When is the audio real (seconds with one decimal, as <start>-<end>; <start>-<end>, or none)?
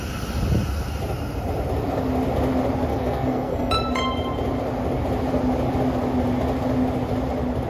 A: 0.0-2.9; 3.7-7.7